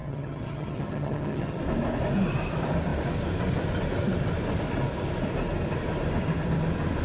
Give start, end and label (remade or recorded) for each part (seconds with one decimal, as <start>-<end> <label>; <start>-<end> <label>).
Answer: 0.0-1.6 remade; 1.6-7.0 recorded